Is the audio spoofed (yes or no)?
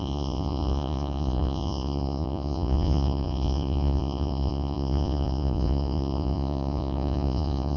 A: yes